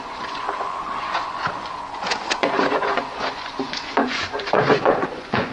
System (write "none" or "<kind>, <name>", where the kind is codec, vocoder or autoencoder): vocoder, Vocos